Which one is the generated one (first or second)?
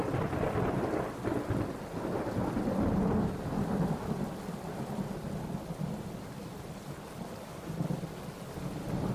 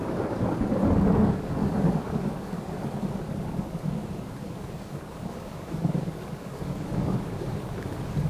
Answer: second